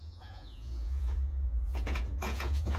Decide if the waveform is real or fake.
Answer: fake